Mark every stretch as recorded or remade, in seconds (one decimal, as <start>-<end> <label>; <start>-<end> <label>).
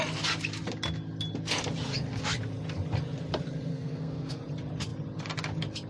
0.0-3.7 recorded; 3.7-4.4 remade; 4.4-5.9 recorded